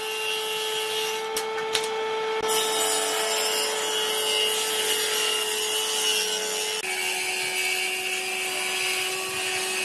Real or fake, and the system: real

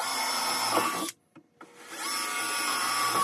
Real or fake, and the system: real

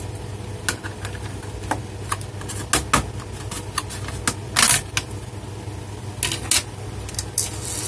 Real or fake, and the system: real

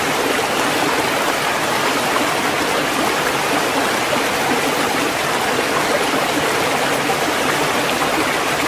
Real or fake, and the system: real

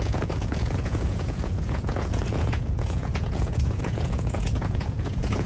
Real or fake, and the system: fake, vocoder, Vocos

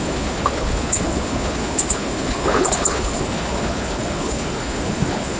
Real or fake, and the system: fake, codec, HILCodec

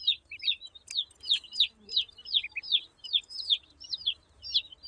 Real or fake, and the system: real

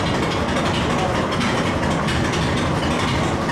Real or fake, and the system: real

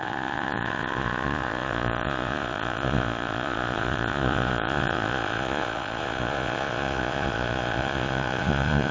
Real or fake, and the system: fake, vocoder, Vocos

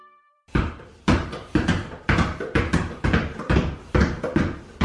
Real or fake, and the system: fake, vocoder, BigVGAN v2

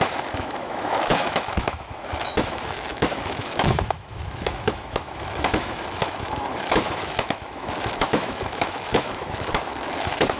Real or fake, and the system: fake, autoencoder, DAC-VAE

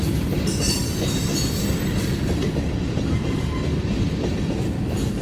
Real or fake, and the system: real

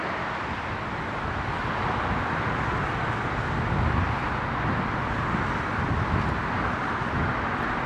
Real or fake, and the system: real